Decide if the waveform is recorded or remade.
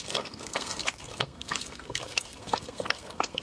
remade